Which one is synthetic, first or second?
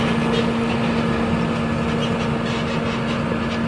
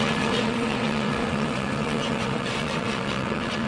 second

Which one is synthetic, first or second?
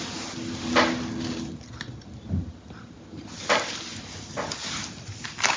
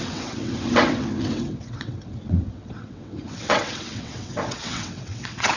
second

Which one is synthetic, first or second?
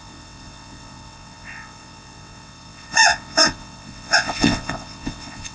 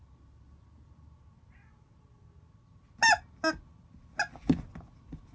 first